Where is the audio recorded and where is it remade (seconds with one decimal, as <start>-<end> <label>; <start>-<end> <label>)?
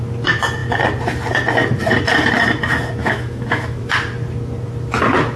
0.0-3.0 recorded; 3.0-3.9 remade; 3.9-5.4 recorded